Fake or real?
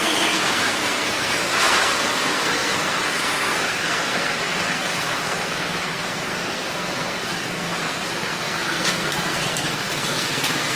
fake